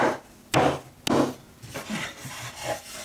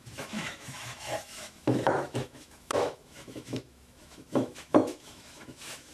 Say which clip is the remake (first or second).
second